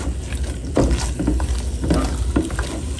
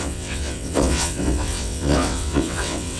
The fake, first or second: second